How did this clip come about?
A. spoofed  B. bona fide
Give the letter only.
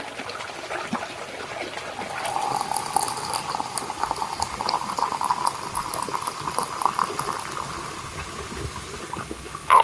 B